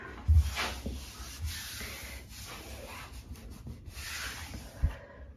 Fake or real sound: real